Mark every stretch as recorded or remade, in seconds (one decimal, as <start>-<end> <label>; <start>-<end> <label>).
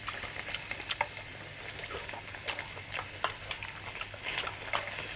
0.0-5.2 recorded